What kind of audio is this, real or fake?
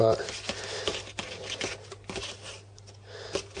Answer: real